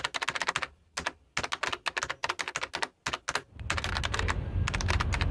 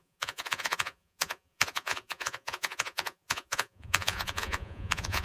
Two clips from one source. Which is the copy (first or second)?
second